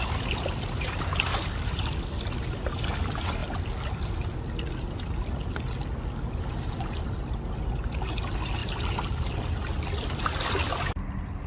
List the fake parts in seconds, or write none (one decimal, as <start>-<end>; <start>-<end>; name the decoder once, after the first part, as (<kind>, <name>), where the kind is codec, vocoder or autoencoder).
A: none